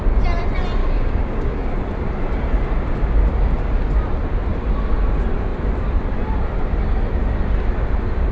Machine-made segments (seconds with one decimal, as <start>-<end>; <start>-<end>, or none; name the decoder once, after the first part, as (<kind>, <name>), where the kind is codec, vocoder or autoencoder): 0.8-1.7 (codec, DAC)

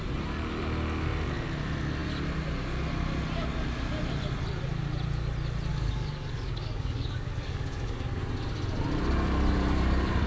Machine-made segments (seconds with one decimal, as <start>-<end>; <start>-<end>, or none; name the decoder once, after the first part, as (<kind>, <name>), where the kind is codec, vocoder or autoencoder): 5.7-8.0 (codec, DAC)

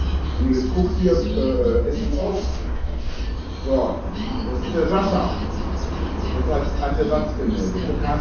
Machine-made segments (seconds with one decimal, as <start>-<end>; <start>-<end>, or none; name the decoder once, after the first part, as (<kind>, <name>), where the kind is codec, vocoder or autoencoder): 2.0-3.2 (codec, DAC)